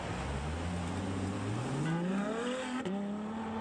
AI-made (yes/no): no